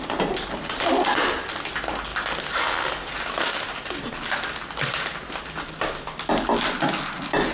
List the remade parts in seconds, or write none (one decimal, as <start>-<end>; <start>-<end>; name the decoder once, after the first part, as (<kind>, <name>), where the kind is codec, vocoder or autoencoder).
none